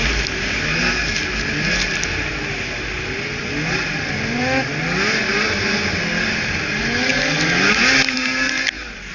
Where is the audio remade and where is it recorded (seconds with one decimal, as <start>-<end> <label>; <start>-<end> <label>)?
0.0-9.1 recorded

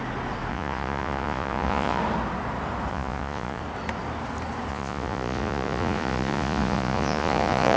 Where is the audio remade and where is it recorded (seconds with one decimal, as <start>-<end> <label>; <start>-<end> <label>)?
0.0-0.5 recorded; 0.5-2.0 remade; 2.0-2.9 recorded; 2.9-3.6 remade; 3.6-4.7 recorded; 4.7-7.8 remade

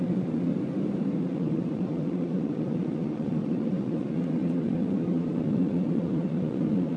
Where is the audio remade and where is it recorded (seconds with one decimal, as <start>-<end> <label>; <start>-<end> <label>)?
0.0-0.5 remade; 0.5-1.2 recorded; 1.2-7.0 remade

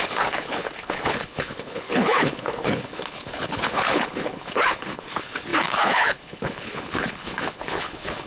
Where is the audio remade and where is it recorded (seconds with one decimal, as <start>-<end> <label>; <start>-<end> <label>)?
0.0-8.3 remade